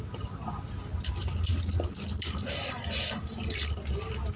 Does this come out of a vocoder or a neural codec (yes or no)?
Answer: no